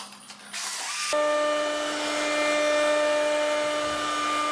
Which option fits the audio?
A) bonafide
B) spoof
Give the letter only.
A